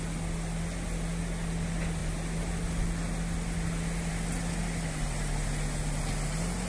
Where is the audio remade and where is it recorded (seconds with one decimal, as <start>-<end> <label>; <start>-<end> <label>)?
0.0-6.7 recorded